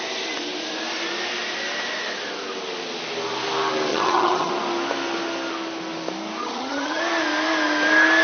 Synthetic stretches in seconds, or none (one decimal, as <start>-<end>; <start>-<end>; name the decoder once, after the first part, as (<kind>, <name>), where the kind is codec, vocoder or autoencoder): 3.9-4.5 (vocoder, HiFi-GAN); 6.4-7.0